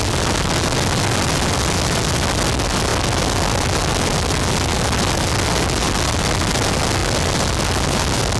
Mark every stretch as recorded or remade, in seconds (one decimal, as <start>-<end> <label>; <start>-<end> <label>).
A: 0.0-8.4 recorded